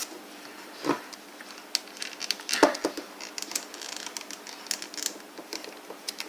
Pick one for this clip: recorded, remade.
recorded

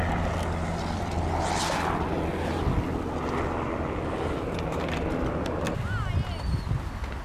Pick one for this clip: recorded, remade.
recorded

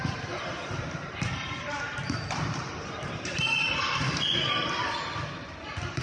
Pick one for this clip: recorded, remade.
remade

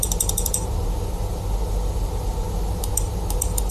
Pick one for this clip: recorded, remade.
recorded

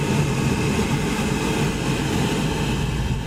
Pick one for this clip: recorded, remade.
recorded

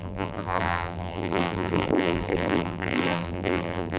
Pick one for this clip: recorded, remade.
remade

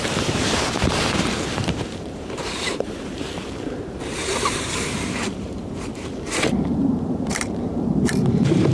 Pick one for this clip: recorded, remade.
remade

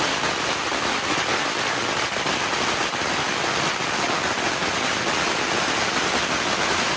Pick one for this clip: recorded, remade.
recorded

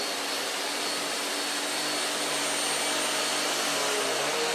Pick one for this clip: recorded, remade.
recorded